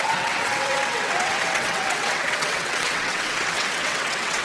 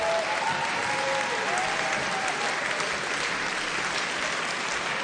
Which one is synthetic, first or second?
first